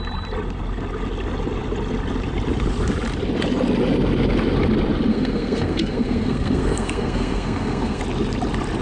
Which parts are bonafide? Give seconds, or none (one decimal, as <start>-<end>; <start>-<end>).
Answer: 0.0-5.1; 8.0-8.8